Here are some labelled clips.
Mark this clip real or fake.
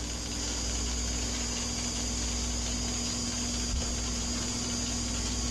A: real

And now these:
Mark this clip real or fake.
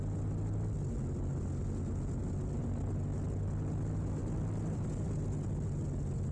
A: real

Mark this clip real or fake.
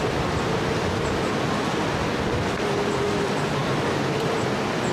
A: real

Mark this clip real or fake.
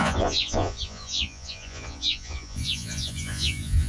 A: fake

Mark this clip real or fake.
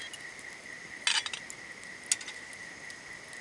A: real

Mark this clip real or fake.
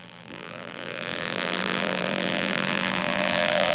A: fake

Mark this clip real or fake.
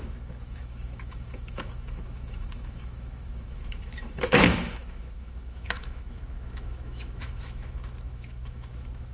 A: fake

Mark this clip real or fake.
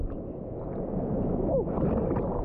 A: real